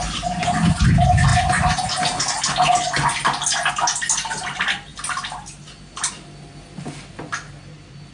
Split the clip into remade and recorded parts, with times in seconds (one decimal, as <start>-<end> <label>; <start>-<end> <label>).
0.0-8.1 recorded